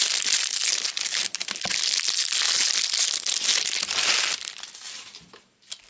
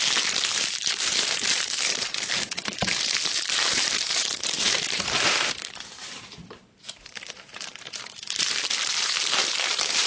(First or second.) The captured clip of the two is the first